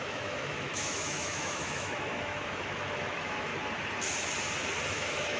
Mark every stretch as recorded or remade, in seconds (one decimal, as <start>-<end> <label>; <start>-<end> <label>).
0.0-3.5 remade; 3.5-4.9 recorded; 4.9-5.4 remade